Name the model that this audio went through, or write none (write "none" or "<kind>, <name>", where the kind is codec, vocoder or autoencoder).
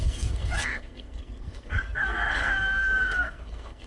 codec, SNAC